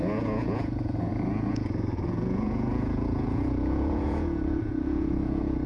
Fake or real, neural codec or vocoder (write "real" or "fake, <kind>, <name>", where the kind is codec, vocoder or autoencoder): fake, vocoder, Vocos